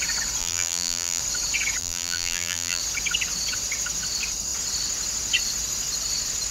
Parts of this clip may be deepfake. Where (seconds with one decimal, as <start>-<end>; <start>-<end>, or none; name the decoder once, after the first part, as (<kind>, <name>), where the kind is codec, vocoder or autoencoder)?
0.4-1.2 (vocoder, BigVGAN v2); 1.8-2.8